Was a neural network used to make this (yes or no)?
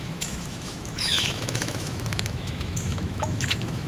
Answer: yes